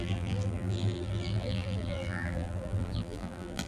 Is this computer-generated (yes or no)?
yes